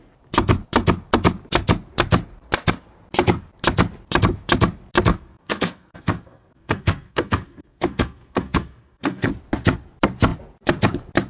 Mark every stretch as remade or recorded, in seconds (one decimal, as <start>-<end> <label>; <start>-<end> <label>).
0.0-5.1 recorded; 5.1-9.3 remade; 9.3-11.3 recorded